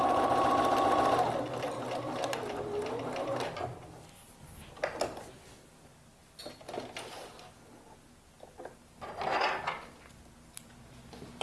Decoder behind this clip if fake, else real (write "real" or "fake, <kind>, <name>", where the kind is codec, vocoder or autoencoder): real